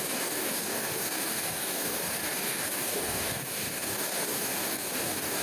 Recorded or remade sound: remade